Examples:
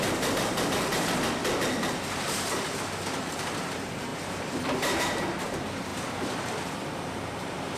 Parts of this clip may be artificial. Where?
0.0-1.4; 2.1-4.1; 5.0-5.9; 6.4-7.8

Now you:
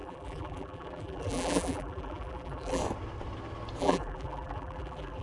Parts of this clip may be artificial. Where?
0.0-2.8; 3.8-5.2

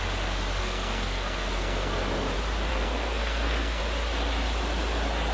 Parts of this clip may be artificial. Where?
0.6-2.0; 2.7-3.8

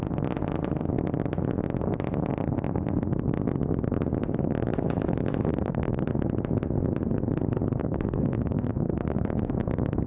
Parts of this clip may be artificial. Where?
5.5-6.0; 7.8-9.5

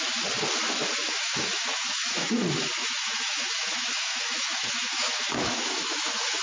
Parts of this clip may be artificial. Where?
1.0-2.4; 2.8-6.4